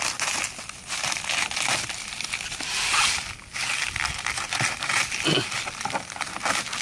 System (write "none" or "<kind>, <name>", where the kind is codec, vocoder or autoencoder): none